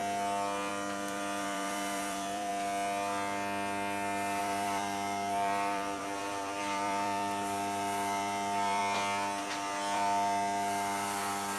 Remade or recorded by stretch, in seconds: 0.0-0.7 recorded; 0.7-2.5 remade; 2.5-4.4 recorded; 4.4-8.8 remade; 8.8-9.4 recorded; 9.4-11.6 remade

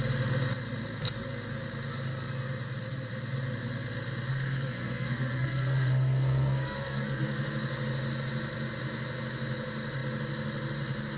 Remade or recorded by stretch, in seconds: 0.0-4.3 recorded; 4.3-7.4 remade; 7.4-11.2 recorded